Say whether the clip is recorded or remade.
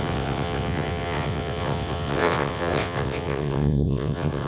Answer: remade